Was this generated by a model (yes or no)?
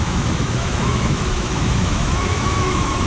yes